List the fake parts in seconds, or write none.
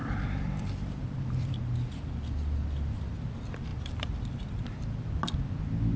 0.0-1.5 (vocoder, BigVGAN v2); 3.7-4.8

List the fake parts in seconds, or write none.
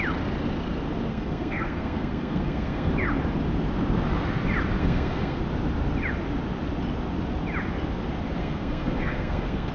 1.1-2.9 (codec, SNAC); 4.8-5.4; 8.4-9.7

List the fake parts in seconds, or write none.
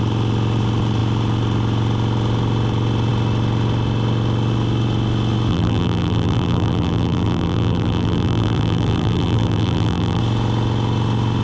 5.5-10.2 (vocoder, BigVGAN v2)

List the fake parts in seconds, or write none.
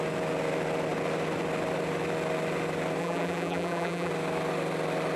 3.0-4.1 (vocoder, BigVGAN v2)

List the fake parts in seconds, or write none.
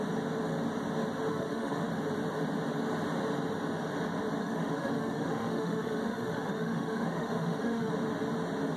1.3-1.9 (autoencoder, DAC-VAE); 4.4-7.9